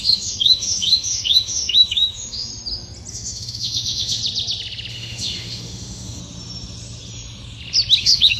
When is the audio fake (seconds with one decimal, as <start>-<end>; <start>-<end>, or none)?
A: 0.0-2.5; 3.1-4.2; 4.9-6.2; 8.0-8.4